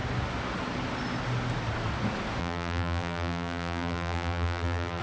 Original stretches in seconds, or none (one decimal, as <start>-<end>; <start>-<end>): 0.0-2.4